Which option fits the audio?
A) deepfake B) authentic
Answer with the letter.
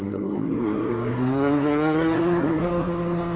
A